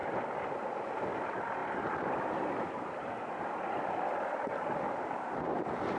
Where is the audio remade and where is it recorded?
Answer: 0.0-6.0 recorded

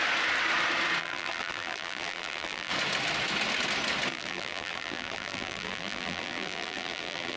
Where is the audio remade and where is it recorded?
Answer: 0.0-1.0 recorded; 1.0-2.7 remade; 2.7-4.1 recorded; 4.1-7.4 remade

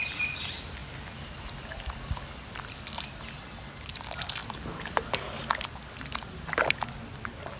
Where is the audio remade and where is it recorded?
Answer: 0.0-0.8 recorded; 0.8-4.0 remade; 4.0-7.6 recorded

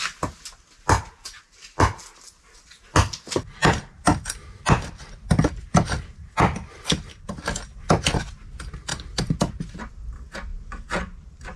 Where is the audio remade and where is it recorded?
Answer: 0.0-10.5 recorded; 10.5-11.6 remade

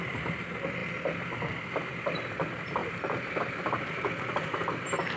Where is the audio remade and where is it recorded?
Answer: 0.0-0.8 remade; 0.8-1.8 recorded; 1.8-5.2 remade

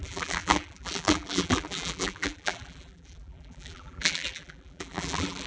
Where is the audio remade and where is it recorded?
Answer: 0.0-5.5 remade